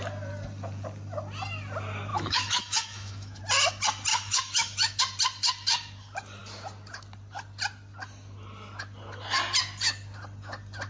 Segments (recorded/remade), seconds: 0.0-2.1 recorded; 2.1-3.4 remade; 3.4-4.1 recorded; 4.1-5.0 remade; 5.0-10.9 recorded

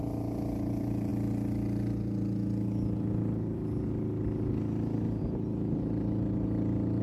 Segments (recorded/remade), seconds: 0.0-7.0 recorded